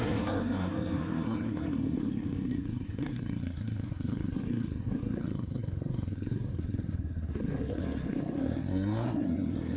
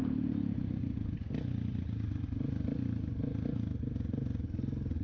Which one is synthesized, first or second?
first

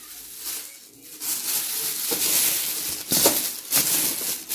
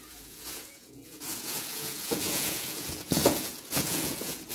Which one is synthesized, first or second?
second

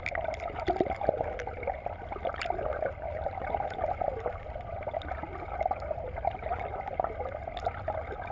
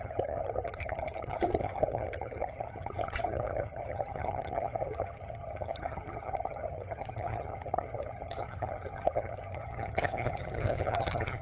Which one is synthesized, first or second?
second